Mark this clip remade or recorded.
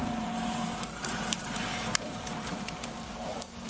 remade